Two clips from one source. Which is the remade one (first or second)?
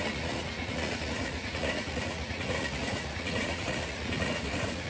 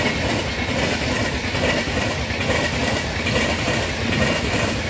first